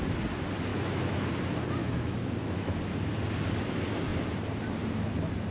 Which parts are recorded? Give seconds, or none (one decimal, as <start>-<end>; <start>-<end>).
0.0-0.7; 1.3-1.8; 2.8-5.5